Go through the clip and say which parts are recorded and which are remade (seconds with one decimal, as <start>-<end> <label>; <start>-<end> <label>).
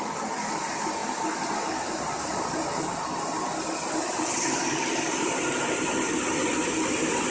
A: 0.0-1.0 remade; 1.0-3.5 recorded; 3.5-7.3 remade